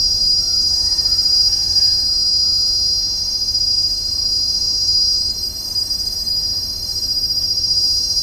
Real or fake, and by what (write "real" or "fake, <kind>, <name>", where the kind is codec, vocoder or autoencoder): real